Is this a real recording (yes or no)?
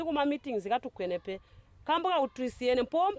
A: yes